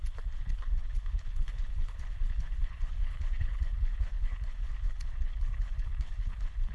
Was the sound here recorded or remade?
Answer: remade